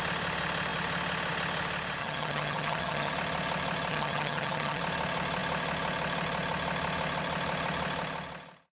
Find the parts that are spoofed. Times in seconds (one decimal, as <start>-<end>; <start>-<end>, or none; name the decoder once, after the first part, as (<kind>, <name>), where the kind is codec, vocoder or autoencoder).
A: 2.0-3.1 (vocoder, HiFi-GAN); 3.9-4.8